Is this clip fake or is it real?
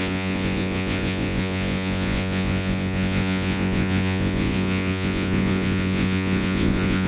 fake